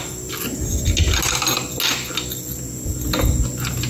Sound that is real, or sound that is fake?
real